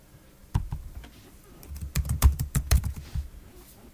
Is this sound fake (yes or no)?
no